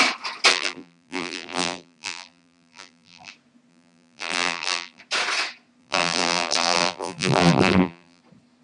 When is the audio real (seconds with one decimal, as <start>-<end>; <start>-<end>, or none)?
0.0-0.5; 3.3-3.7; 5.0-5.8; 8.2-8.6